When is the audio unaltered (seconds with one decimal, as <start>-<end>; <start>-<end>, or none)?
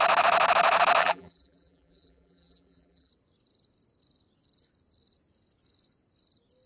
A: 0.0-1.0; 3.1-6.7